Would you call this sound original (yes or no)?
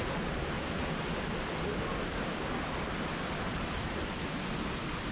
yes